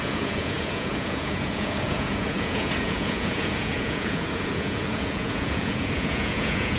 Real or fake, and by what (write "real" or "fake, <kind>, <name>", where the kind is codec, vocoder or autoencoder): fake, vocoder, Vocos